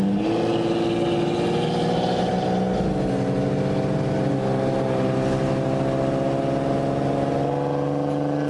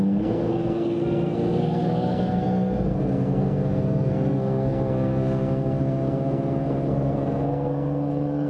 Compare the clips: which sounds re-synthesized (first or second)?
second